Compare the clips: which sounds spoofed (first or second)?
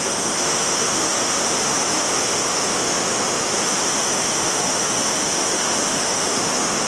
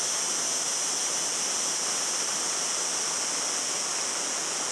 first